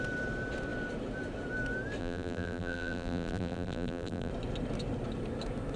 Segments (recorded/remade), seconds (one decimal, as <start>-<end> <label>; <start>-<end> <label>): 0.0-2.0 recorded; 2.0-4.3 remade; 4.3-5.8 recorded